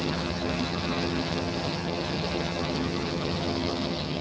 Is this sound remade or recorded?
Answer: remade